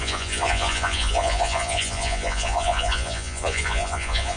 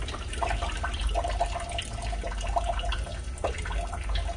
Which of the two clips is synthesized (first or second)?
first